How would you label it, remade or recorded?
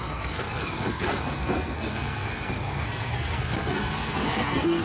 remade